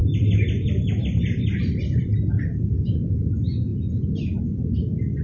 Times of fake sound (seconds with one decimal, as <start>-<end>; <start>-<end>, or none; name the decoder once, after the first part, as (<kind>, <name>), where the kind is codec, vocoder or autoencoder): 0.0-3.1 (vocoder, BigVGAN v2)